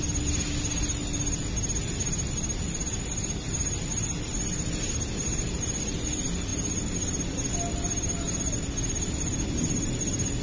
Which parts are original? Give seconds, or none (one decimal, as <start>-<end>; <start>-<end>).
0.0-10.4